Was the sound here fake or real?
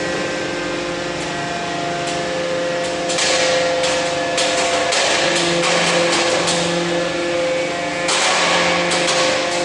real